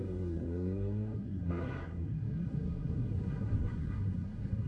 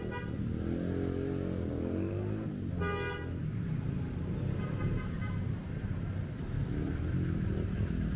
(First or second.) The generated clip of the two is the first